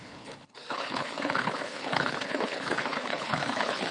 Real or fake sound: fake